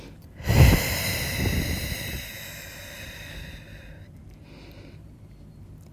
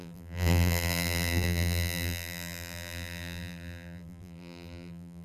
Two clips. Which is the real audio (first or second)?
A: first